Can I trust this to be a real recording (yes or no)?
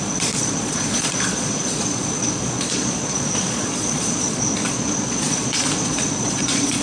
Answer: no